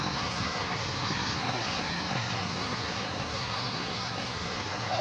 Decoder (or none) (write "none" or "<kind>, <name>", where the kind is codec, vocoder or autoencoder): codec, SNAC